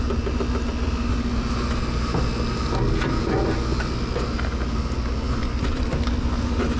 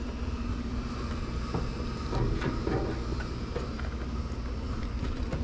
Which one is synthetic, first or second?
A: second